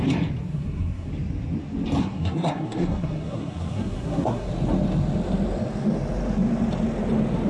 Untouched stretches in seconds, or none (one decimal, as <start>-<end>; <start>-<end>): 0.0-0.5; 1.1-2.0; 4.5-7.5